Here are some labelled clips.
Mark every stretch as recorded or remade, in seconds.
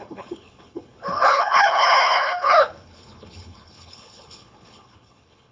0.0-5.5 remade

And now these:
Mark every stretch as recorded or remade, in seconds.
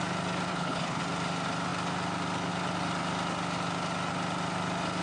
0.0-0.5 recorded; 0.5-1.0 remade; 1.0-5.0 recorded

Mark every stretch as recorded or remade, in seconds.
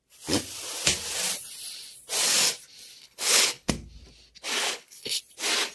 0.0-3.0 recorded; 3.0-3.7 remade; 3.7-4.6 recorded; 4.6-5.2 remade; 5.2-5.7 recorded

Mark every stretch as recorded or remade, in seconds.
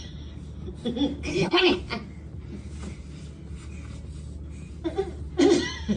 0.0-1.3 recorded; 1.3-1.8 remade; 1.8-6.0 recorded